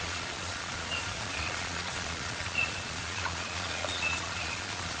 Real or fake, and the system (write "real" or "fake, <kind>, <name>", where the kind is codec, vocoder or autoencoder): fake, vocoder, Vocos